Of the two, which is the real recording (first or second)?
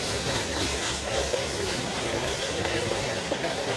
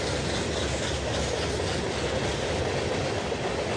second